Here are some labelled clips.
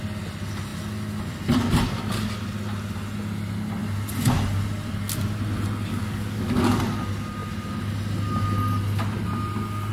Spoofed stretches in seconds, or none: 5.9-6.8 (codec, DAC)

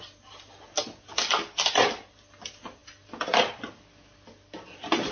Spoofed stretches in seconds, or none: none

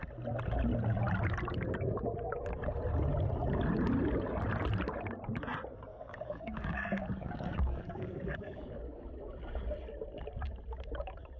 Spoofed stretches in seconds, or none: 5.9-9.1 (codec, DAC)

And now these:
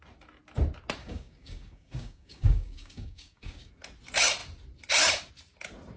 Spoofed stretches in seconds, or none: 1.0-3.7 (codec, DAC)